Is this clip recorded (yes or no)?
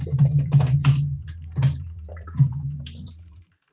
no